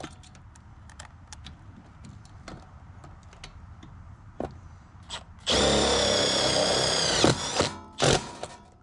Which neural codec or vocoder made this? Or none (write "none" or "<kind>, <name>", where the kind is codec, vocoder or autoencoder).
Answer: none